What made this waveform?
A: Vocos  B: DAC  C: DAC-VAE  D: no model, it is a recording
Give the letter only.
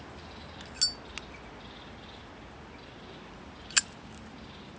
D